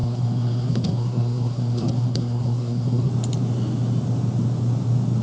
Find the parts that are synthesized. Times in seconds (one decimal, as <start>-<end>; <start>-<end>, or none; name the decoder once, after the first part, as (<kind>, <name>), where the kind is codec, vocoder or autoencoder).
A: 0.0-3.1 (codec, SNAC)